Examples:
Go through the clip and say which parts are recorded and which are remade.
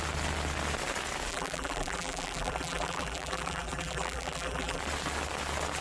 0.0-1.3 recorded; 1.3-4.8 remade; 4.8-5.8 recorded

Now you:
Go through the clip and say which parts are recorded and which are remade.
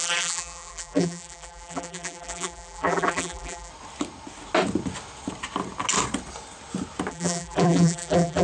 0.0-3.7 remade; 3.7-7.1 recorded; 7.1-8.4 remade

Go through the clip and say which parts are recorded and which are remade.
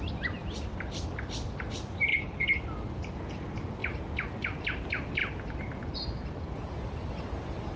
0.0-2.1 recorded; 2.1-2.6 remade; 2.6-7.8 recorded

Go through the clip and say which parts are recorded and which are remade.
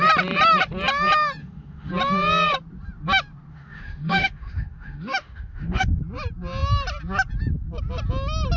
0.0-1.4 recorded; 1.4-1.9 remade; 1.9-3.5 recorded; 3.5-6.0 remade; 6.0-8.6 recorded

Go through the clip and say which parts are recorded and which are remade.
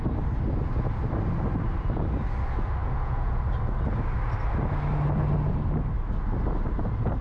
0.0-2.8 recorded; 2.8-3.4 remade; 3.4-7.2 recorded